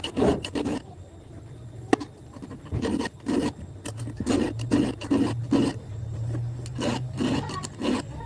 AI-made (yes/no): no